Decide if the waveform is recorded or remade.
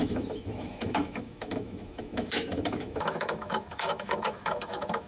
remade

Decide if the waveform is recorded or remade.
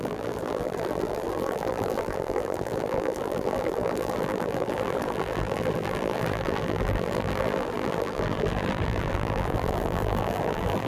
remade